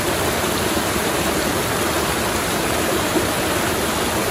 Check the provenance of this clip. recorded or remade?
recorded